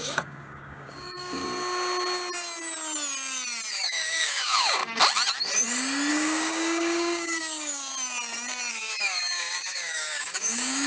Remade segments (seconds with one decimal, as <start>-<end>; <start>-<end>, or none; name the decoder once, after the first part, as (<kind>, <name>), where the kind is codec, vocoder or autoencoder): 0.0-1.4 (codec, DAC); 3.7-4.8; 6.1-7.9; 8.7-10.9